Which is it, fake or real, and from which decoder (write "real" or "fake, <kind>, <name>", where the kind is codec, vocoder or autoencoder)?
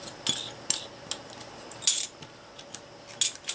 real